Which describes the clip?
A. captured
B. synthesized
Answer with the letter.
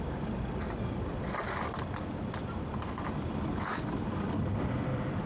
A